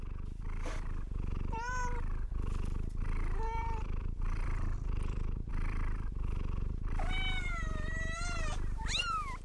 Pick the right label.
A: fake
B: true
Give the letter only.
A